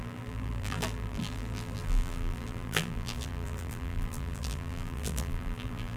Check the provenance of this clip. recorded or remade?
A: remade